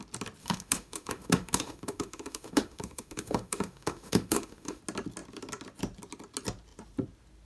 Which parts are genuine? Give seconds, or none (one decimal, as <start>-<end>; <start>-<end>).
0.0-0.4; 4.8-7.4